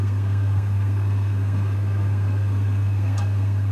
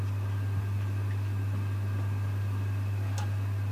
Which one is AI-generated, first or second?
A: first